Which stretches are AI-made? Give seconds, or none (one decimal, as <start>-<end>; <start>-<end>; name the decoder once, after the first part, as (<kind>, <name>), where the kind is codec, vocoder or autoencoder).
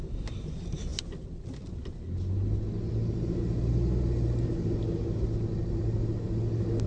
none